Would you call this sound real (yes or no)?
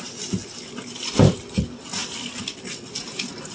yes